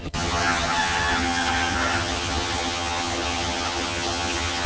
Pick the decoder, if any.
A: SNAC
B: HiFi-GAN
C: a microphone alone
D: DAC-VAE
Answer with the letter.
B